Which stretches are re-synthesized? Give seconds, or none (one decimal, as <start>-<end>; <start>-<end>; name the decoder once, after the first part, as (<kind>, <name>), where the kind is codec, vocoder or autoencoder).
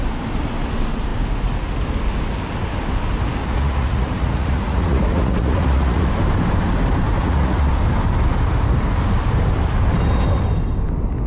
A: 3.4-6.1 (vocoder, Vocos); 7.2-7.7